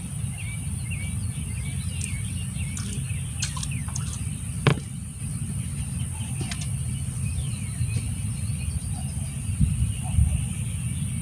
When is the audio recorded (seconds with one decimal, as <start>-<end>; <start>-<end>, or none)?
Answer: 0.0-11.2